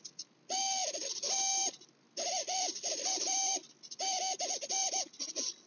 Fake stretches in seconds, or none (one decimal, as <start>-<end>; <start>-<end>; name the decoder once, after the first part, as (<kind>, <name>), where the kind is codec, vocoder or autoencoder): none

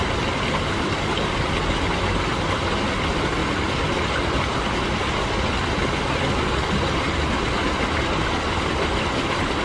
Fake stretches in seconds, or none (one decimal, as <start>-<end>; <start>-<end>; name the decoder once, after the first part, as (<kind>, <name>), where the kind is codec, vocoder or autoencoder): none

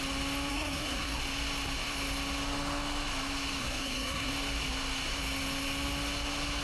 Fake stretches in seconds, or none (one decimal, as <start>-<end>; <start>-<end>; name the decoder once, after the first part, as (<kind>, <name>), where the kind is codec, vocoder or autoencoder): 0.5-1.2 (codec, SNAC); 3.6-4.3

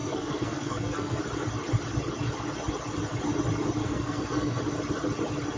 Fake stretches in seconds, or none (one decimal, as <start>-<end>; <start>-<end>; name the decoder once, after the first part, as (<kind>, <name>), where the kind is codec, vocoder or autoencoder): 0.0-1.2 (codec, SNAC); 3.8-4.6